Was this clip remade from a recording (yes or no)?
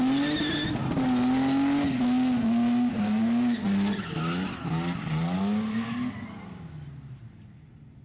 no